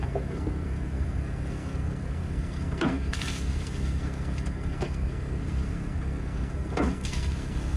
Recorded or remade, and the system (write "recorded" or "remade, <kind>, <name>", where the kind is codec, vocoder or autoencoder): remade, codec, SNAC